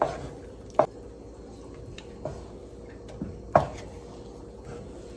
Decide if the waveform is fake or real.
real